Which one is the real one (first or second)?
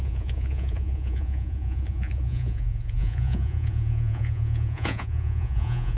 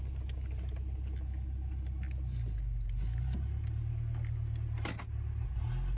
second